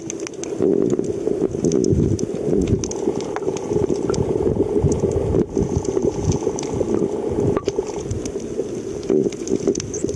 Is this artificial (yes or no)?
no